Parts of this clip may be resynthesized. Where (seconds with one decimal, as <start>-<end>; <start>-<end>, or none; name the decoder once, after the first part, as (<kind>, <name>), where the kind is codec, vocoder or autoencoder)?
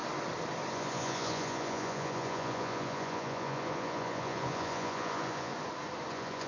0.7-5.5 (vocoder, Vocos); 6.1-6.5